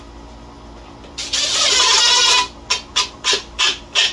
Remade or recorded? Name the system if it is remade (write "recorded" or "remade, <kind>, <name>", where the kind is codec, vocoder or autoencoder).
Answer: recorded